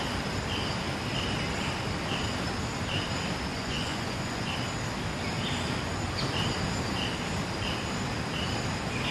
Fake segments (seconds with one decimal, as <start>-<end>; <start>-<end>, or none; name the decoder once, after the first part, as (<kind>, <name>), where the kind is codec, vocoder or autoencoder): 3.5-4.5 (vocoder, Vocos)